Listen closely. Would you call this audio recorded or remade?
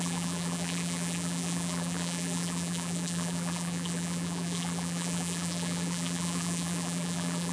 remade